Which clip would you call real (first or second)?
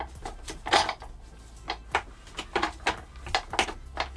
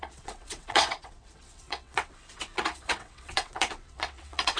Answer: first